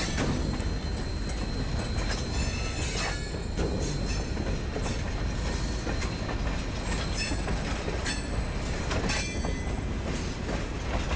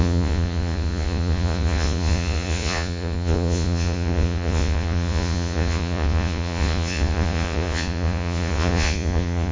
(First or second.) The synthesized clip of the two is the second